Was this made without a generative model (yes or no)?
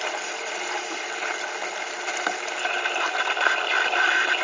yes